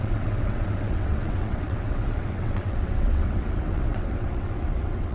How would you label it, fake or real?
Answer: fake